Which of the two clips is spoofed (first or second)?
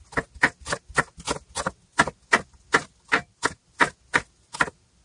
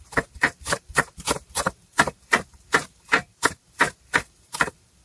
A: second